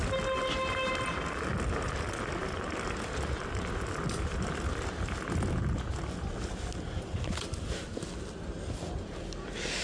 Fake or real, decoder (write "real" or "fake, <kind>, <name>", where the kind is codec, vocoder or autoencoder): real